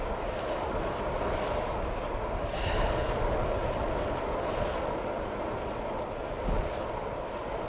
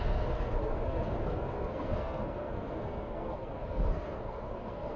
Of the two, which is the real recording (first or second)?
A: first